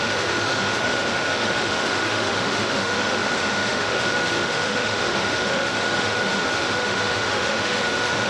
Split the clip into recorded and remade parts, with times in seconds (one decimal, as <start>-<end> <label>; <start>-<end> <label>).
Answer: 0.0-8.3 remade